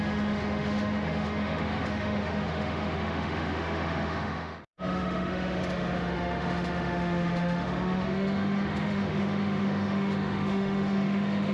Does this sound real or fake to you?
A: fake